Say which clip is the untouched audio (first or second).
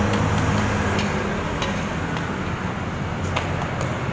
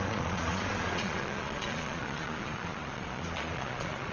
first